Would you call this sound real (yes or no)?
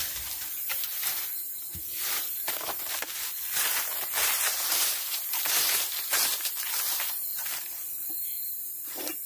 no